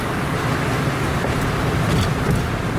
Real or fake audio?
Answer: real